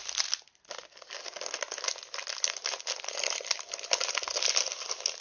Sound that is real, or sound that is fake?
real